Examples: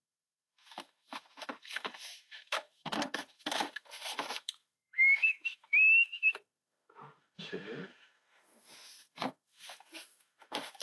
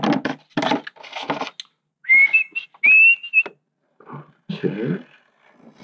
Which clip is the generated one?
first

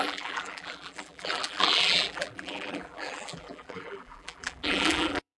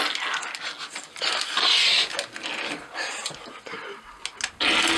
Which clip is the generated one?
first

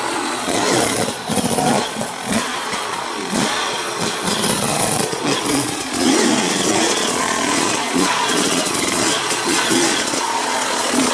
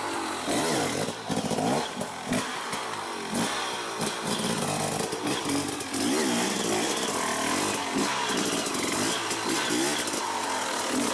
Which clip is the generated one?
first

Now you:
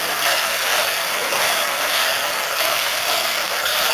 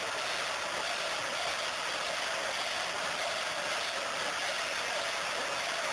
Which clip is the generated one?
first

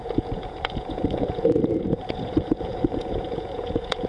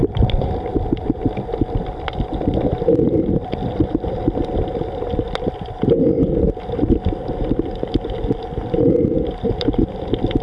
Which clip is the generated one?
first